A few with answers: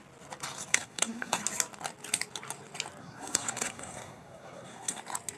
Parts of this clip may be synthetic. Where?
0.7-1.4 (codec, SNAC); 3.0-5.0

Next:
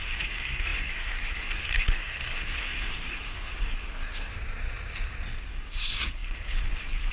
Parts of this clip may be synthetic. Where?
0.0-4.3 (codec, SNAC); 5.4-7.1

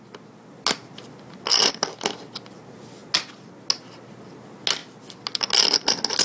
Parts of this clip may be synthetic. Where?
none

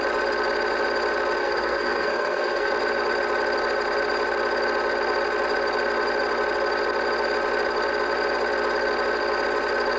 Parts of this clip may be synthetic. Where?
1.4-2.7 (codec, SNAC)